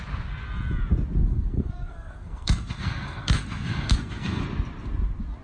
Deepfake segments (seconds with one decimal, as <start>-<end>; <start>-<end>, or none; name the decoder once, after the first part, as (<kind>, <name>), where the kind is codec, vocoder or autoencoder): 1.2-4.4 (codec, SNAC)